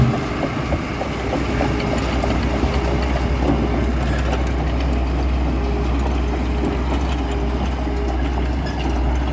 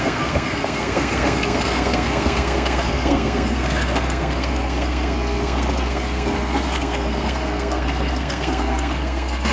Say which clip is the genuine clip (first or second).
first